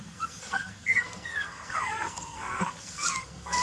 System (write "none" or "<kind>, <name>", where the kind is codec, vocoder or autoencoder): codec, SNAC